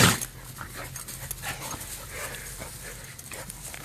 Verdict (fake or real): real